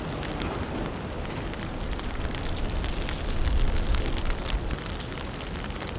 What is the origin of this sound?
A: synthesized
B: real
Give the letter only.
B